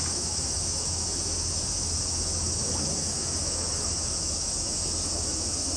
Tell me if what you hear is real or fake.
fake